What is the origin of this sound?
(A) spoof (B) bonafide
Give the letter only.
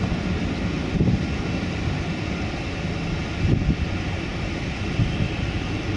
B